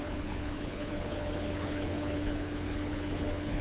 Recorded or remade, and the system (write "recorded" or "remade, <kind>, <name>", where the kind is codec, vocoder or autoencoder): remade, codec, HILCodec